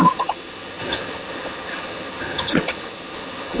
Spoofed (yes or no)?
yes